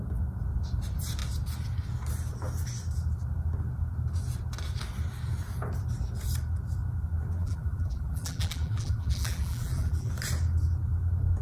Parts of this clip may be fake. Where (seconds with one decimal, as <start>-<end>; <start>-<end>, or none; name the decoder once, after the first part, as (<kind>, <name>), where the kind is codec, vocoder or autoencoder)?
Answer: 7.4-10.1 (vocoder, BigVGAN v2)